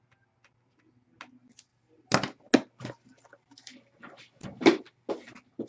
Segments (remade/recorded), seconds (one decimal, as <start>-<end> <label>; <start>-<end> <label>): 0.0-5.7 recorded